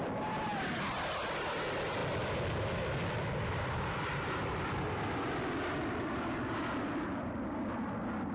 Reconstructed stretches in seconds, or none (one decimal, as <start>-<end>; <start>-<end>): 2.0-7.0